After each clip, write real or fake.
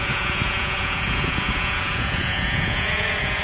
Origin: fake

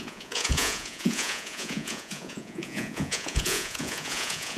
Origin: fake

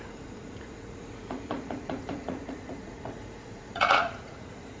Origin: fake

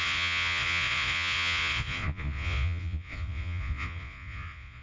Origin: fake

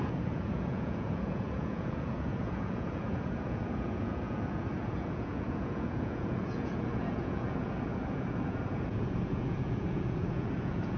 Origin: fake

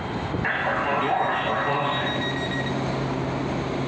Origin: real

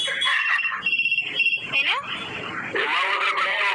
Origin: real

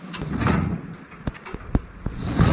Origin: fake